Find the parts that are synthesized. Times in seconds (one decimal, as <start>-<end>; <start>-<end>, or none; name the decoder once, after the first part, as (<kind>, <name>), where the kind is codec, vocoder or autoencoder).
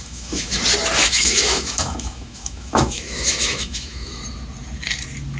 0.0-0.6 (autoencoder, DAC-VAE); 1.0-4.2